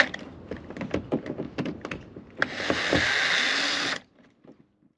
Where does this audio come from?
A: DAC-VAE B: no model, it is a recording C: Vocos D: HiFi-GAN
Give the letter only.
B